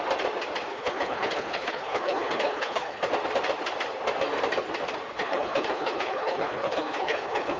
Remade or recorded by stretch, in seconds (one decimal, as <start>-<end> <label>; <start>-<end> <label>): 0.0-0.7 recorded; 0.7-3.1 remade; 3.1-5.1 recorded; 5.1-7.6 remade